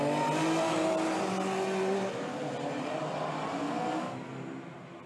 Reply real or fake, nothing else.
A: real